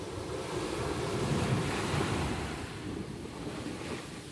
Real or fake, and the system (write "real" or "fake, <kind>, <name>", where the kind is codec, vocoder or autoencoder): real